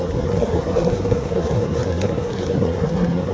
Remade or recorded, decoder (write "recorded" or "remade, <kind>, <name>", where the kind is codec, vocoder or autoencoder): remade, codec, SNAC